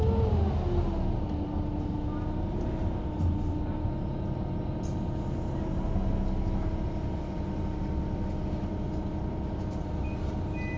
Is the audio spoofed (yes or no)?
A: no